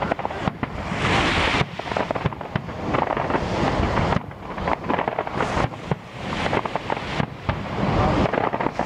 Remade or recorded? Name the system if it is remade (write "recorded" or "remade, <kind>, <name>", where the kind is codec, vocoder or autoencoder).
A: recorded